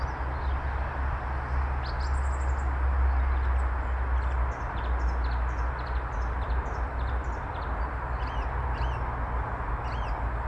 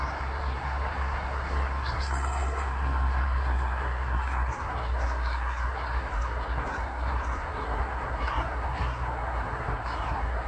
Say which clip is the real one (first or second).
first